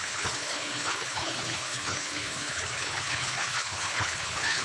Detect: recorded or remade remade